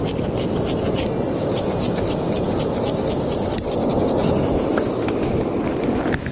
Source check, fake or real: real